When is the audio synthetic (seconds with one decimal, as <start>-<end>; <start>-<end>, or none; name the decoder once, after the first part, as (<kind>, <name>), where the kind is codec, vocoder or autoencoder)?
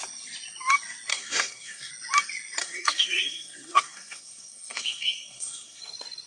1.1-1.9 (codec, SNAC); 2.6-5.8